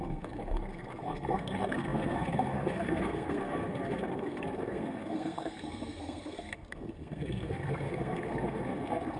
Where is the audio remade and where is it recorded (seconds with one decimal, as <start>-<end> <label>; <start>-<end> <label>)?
0.0-9.2 remade